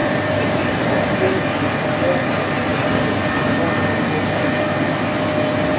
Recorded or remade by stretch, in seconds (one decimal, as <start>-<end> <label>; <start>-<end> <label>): 0.0-0.9 remade; 0.9-5.8 recorded